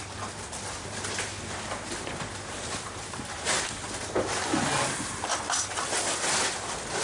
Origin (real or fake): real